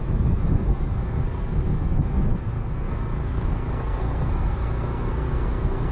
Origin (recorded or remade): remade